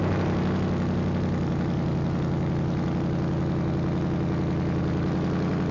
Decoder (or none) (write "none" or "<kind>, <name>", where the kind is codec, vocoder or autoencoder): none